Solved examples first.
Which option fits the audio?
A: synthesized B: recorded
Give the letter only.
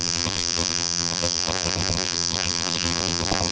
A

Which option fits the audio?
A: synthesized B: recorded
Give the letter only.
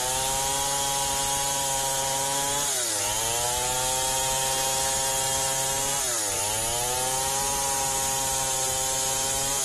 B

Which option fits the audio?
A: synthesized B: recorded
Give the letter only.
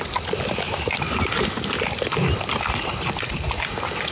B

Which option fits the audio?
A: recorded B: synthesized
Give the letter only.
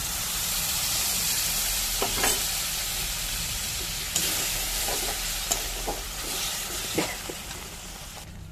B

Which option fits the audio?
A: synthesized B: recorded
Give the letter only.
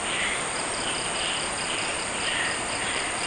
A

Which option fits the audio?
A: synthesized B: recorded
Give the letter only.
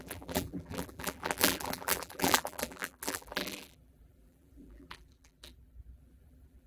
A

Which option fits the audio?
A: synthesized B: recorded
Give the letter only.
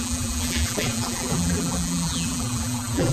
A